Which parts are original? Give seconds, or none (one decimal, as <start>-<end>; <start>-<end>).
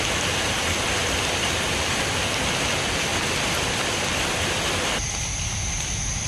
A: 0.0-6.3